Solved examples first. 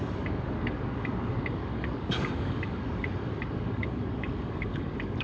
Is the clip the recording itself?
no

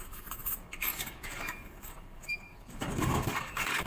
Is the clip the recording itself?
no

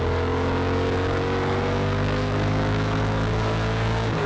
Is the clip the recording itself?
no